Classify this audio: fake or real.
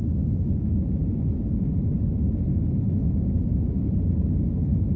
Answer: real